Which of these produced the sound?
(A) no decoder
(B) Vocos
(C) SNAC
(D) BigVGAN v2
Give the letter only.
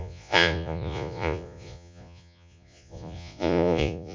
B